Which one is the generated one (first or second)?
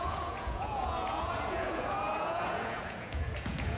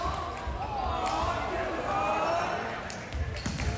first